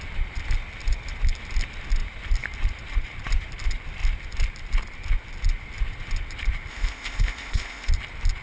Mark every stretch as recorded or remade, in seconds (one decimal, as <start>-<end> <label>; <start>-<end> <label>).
0.0-6.7 recorded; 6.7-7.9 remade; 7.9-8.4 recorded